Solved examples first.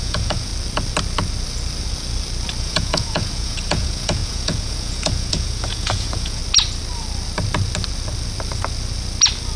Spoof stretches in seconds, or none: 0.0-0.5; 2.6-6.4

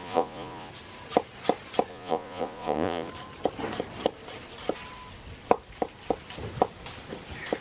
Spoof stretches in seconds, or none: 0.0-0.7; 1.9-3.1

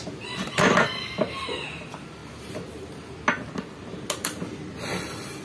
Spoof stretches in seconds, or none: none

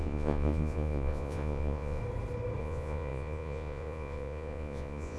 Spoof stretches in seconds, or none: 0.0-2.0; 2.6-5.2

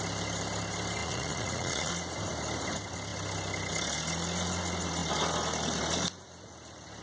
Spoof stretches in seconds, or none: 1.0-1.9